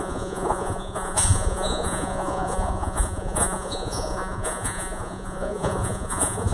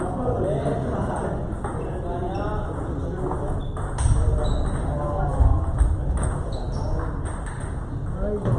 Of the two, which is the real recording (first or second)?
second